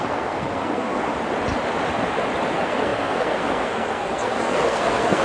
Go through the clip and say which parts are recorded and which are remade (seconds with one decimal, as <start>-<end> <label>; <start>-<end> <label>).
0.0-1.1 remade; 1.1-2.5 recorded; 2.5-5.2 remade